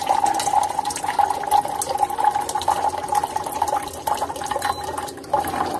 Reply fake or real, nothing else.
real